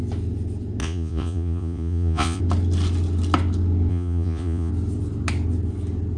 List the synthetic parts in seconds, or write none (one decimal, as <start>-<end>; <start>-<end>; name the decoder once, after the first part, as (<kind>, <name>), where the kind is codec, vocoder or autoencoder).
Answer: 0.8-2.4 (vocoder, Vocos); 3.9-4.7